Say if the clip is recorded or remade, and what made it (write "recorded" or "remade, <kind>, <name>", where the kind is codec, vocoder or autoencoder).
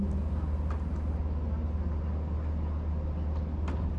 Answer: recorded